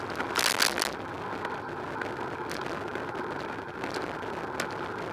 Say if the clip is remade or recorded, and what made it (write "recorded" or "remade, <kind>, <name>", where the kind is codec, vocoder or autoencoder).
recorded